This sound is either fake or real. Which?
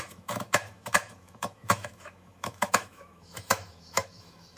fake